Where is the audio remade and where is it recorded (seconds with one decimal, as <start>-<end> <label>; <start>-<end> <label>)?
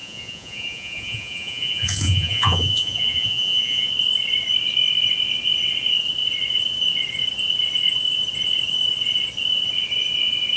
0.0-3.9 remade; 3.9-10.6 recorded